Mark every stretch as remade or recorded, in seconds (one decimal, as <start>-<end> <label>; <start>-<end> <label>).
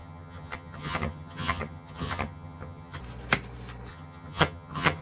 0.0-3.0 remade; 3.0-3.9 recorded; 3.9-5.0 remade